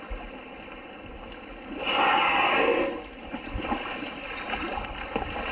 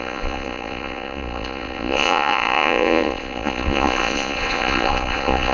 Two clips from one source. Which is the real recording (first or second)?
first